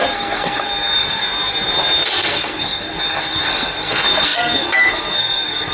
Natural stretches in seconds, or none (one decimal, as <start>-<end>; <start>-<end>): 1.2-2.1